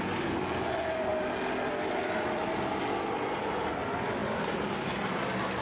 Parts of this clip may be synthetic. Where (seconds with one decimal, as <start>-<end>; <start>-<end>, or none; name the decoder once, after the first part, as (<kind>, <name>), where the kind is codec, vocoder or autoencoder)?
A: 4.2-4.9 (vocoder, BigVGAN v2)